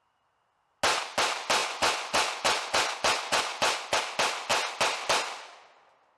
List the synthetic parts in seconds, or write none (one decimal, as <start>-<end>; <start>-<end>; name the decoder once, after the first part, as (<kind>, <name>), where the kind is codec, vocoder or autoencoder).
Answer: 1.6-4.0 (vocoder, Vocos)